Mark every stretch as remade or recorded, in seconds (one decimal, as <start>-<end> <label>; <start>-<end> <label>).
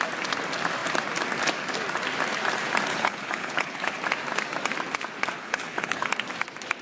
0.0-2.9 recorded; 2.9-4.0 remade; 4.0-5.4 recorded; 5.4-6.1 remade; 6.1-6.8 recorded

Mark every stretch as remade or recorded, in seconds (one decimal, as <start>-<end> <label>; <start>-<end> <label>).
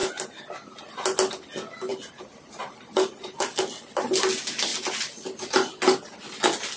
0.0-1.9 recorded; 1.9-3.5 remade; 3.5-6.8 recorded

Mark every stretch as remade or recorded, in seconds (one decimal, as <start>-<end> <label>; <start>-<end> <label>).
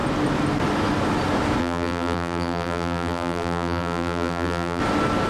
0.0-1.6 recorded; 1.6-4.8 remade; 4.8-5.3 recorded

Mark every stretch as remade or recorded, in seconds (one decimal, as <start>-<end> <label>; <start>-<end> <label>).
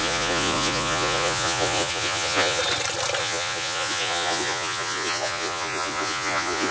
0.0-2.6 remade; 2.6-3.2 recorded; 3.2-6.7 remade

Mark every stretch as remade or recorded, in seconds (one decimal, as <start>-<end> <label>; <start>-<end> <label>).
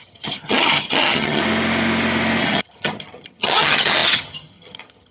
0.0-1.4 remade; 1.4-2.4 recorded; 2.4-5.1 remade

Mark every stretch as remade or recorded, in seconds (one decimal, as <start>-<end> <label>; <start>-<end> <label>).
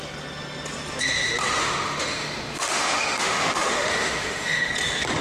0.0-1.6 recorded; 1.6-4.7 remade; 4.7-5.2 recorded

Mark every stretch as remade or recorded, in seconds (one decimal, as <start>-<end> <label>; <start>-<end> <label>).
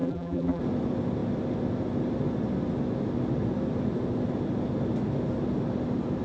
0.0-0.6 remade; 0.6-6.2 recorded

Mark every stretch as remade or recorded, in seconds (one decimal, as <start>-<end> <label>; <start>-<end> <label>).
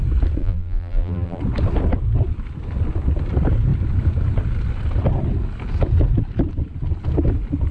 0.0-0.4 recorded; 0.4-1.4 remade; 1.4-7.7 recorded